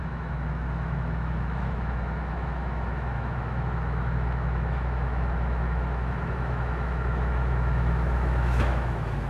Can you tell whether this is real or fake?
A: fake